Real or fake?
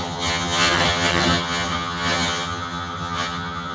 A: fake